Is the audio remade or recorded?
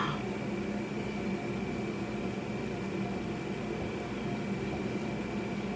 recorded